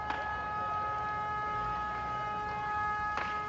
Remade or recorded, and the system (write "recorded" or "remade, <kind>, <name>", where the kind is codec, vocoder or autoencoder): recorded